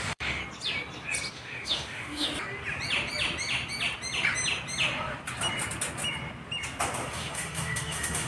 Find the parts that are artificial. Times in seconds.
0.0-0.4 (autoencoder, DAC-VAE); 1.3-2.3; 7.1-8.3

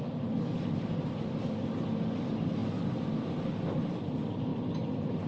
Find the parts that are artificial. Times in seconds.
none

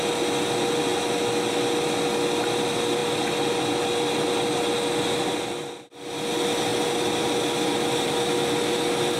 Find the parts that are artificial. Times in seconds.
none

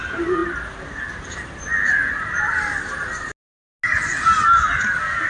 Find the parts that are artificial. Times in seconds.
none

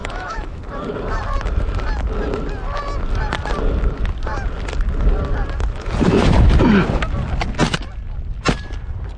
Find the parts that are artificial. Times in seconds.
0.0-0.6 (autoencoder, DAC-VAE)